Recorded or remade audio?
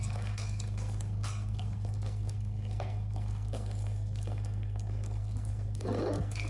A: remade